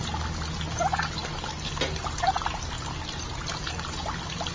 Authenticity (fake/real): real